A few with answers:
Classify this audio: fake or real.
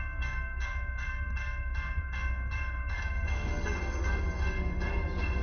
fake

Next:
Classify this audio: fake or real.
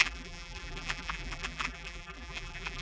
fake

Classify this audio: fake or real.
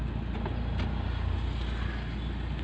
real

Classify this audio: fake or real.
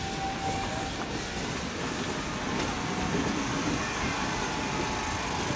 real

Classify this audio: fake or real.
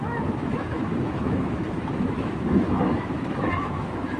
fake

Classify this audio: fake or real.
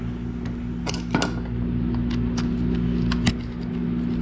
real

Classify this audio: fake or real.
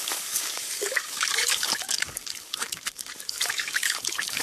fake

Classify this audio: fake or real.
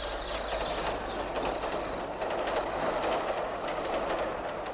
real